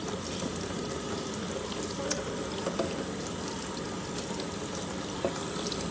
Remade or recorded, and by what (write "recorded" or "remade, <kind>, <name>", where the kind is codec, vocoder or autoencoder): recorded